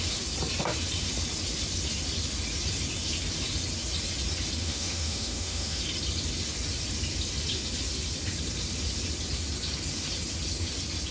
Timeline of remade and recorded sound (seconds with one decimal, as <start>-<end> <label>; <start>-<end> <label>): 0.0-4.6 recorded; 4.6-5.8 remade; 5.8-11.1 recorded

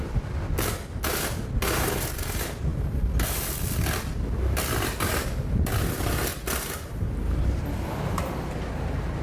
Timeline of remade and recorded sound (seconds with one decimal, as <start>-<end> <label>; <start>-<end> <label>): 0.0-2.7 recorded; 2.7-5.8 remade; 5.8-6.3 recorded; 6.3-7.6 remade; 7.6-9.2 recorded